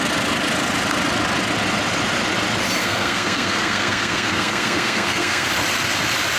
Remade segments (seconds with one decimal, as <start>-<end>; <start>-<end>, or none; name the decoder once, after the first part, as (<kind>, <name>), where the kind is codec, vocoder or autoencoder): 2.8-5.5 (codec, SNAC)